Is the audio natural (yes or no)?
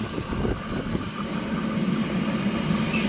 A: yes